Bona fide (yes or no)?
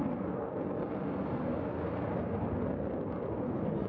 yes